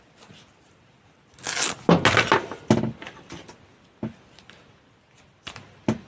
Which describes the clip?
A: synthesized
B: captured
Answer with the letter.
B